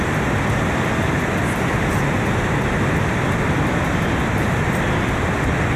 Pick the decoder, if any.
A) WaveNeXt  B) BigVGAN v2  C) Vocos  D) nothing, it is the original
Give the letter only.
D